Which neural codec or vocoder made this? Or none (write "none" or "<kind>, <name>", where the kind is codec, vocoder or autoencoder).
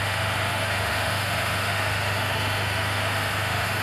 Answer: autoencoder, DAC-VAE